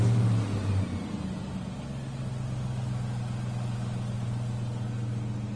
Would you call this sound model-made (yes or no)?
no